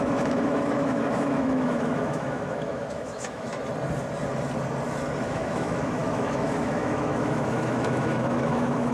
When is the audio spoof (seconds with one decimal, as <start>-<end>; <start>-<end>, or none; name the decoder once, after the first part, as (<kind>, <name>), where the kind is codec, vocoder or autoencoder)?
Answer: 0.0-3.5 (autoencoder, DAC-VAE); 5.2-8.9